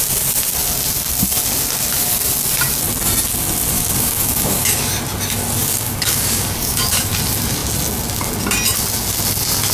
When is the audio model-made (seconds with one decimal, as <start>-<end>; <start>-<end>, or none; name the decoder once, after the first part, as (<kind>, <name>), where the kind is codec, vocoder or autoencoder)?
3.7-4.9 (codec, DAC); 5.6-7.1